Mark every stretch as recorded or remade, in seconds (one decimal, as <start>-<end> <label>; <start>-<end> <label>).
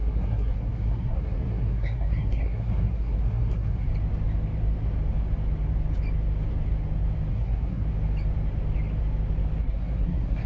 0.0-3.9 remade; 3.9-7.3 recorded; 7.3-7.8 remade; 7.8-9.6 recorded; 9.6-10.5 remade